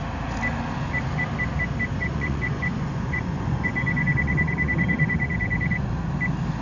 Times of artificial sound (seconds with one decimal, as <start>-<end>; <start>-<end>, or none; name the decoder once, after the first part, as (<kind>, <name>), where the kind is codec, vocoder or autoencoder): 1.9-5.9 (vocoder, Vocos)